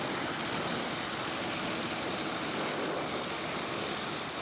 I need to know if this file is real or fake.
real